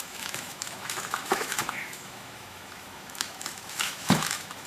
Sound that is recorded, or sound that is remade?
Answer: remade